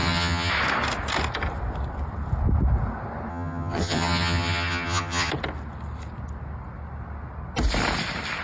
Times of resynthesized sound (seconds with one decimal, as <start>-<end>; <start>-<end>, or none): 0.0-0.5; 3.3-5.3